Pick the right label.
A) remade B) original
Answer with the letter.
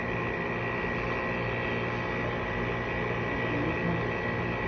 B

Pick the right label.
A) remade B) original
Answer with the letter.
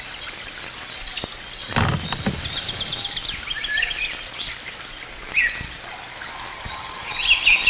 B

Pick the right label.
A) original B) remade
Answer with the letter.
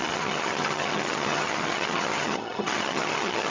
B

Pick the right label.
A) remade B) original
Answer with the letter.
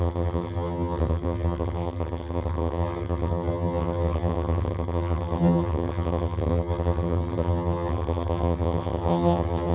A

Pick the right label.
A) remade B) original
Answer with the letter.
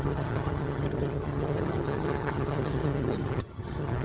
A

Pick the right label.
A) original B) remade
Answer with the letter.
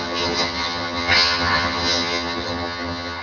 B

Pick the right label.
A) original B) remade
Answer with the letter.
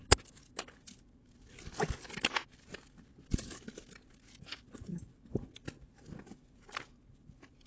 A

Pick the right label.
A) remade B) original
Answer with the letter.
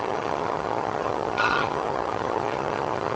A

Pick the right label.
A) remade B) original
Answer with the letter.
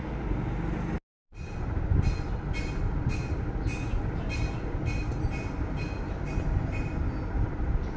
B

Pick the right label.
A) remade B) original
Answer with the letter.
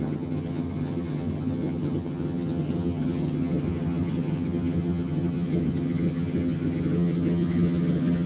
A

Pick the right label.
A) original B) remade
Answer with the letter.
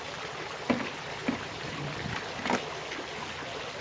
A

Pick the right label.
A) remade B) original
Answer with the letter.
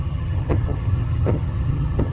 A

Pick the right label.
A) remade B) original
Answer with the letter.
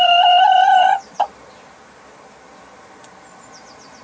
B